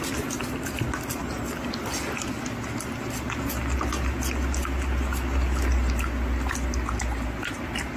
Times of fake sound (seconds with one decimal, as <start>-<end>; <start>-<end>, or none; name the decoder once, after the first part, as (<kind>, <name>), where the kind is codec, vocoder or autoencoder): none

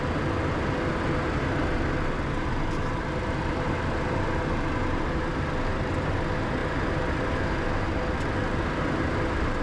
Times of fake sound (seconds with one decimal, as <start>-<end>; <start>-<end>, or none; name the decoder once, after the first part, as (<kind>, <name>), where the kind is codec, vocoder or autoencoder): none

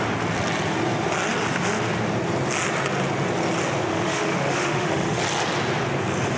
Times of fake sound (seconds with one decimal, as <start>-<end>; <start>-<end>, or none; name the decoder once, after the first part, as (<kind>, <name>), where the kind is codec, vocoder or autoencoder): 3.9-5.2 (autoencoder, DAC-VAE)

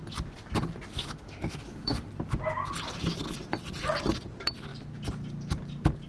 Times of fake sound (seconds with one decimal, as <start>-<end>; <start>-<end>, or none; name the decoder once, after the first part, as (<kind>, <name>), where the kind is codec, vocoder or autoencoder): 0.9-2.1 (autoencoder, DAC-VAE)

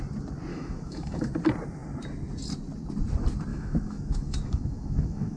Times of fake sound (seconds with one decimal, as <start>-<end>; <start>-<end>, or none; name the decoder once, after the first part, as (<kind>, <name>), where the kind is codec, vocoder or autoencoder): 0.5-1.3 (autoencoder, DAC-VAE); 3.5-5.4

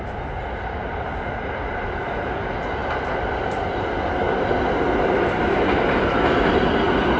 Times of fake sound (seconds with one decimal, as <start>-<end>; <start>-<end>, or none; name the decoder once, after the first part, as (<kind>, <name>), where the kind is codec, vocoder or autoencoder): none

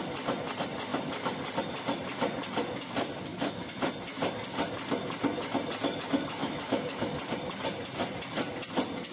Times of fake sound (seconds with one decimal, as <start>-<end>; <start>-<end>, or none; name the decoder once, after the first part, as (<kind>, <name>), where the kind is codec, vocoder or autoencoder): 3.3-3.8 (autoencoder, DAC-VAE); 6.4-7.2